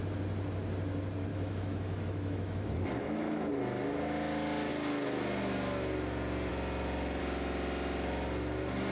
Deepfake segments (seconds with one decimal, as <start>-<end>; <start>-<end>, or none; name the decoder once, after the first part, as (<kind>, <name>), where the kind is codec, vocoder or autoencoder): 1.3-3.5 (autoencoder, DAC-VAE)